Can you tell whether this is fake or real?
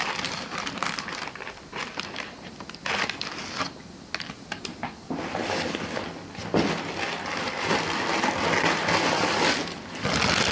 real